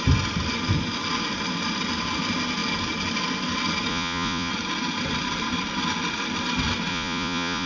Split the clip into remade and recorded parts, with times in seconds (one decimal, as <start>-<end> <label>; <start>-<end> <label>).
0.0-3.9 recorded; 3.9-4.5 remade; 4.5-6.9 recorded; 6.9-7.7 remade